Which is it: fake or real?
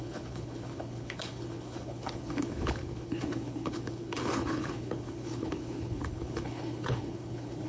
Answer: fake